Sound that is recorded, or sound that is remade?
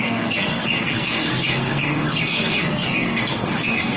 remade